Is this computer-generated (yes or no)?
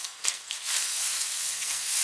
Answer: yes